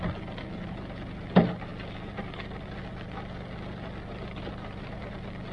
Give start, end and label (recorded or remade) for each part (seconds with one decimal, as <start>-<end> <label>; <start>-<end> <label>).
0.0-5.5 recorded